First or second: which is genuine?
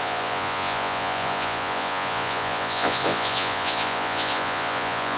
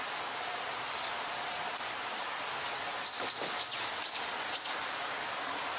second